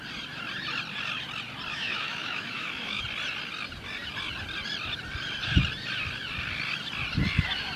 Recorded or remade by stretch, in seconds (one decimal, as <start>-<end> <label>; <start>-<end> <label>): 0.0-1.7 recorded; 1.7-3.0 remade; 3.0-7.8 recorded